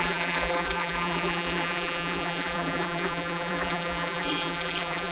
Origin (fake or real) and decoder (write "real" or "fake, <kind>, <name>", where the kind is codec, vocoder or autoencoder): fake, vocoder, BigVGAN v2